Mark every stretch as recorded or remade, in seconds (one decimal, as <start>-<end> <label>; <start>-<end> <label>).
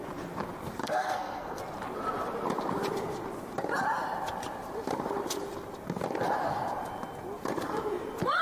0.0-0.8 recorded; 0.8-1.6 remade; 1.6-8.4 recorded